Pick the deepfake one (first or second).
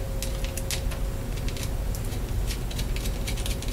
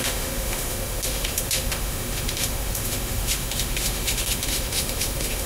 second